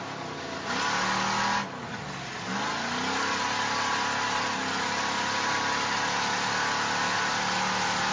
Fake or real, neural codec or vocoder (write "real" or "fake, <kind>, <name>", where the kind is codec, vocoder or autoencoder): real